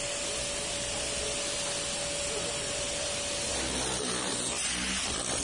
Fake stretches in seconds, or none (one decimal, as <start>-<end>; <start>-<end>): none